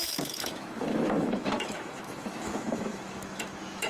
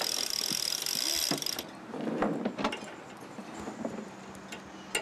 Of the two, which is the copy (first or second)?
first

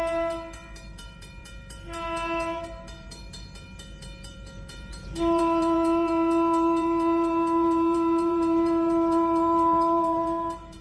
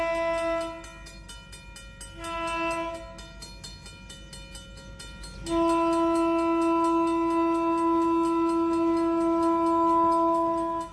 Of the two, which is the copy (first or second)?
first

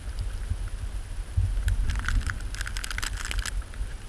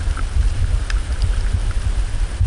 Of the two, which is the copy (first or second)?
second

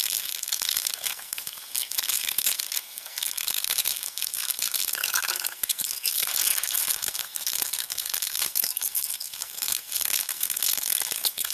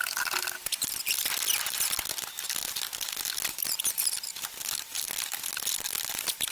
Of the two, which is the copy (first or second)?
first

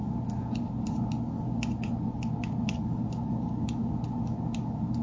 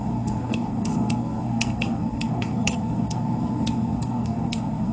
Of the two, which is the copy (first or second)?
second